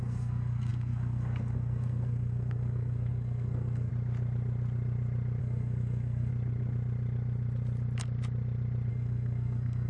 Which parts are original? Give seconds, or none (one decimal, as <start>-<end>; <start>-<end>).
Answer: 3.9-5.4; 6.3-8.9